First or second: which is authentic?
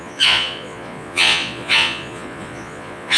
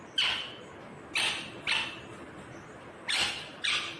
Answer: second